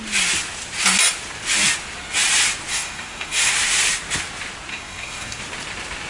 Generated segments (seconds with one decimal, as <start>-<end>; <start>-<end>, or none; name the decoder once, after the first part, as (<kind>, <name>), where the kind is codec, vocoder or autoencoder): 2.7-3.5 (codec, SNAC); 4.7-5.4